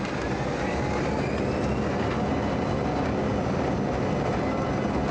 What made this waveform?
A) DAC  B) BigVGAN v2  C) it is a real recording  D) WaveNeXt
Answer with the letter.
C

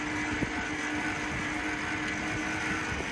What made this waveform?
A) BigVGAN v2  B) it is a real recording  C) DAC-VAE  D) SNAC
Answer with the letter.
B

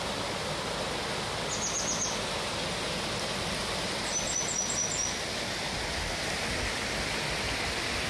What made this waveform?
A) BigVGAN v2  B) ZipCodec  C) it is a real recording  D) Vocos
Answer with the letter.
C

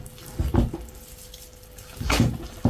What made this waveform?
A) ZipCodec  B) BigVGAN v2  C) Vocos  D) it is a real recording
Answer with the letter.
B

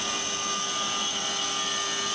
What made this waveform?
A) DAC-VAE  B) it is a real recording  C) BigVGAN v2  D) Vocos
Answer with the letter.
B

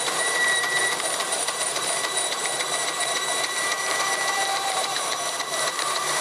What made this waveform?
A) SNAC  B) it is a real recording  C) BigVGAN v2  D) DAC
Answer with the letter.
C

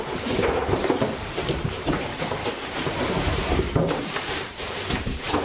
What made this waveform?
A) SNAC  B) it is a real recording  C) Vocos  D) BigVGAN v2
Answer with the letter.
D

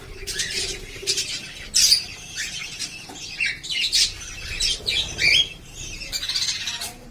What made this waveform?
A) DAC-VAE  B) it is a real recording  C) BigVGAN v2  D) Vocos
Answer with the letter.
C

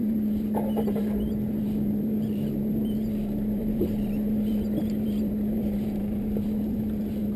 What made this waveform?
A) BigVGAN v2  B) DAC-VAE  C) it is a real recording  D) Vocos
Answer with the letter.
A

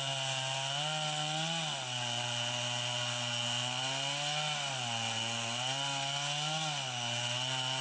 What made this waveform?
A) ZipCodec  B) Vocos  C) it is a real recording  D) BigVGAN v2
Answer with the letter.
C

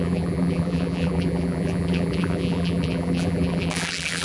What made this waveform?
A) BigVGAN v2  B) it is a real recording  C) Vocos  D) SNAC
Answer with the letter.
A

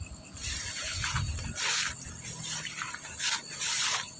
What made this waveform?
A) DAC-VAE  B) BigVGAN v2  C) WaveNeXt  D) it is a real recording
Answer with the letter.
D